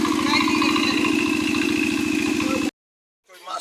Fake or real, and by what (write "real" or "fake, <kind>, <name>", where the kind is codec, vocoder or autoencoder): real